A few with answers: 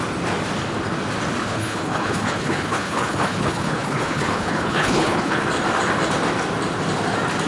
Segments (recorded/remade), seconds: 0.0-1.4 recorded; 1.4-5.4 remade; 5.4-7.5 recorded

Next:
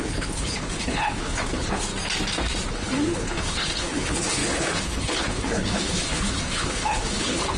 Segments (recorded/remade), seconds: 0.0-1.9 remade; 1.9-2.7 recorded; 2.7-7.6 remade

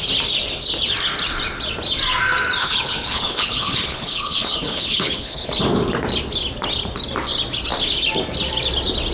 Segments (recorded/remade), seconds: 0.0-2.6 recorded; 2.6-5.5 remade; 5.5-9.1 recorded